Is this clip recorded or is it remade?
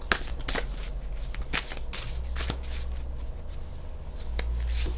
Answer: recorded